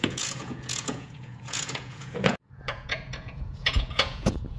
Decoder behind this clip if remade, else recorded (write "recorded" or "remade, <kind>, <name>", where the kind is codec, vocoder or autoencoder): remade, vocoder, Vocos